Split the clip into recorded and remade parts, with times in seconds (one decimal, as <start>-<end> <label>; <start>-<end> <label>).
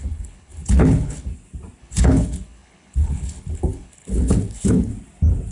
0.0-1.3 remade; 1.3-1.8 recorded; 1.8-4.9 remade; 4.9-5.5 recorded